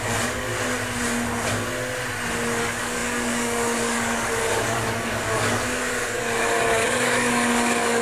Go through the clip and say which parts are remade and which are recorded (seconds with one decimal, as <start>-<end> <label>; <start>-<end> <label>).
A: 0.0-0.5 remade; 0.5-2.6 recorded; 2.6-8.0 remade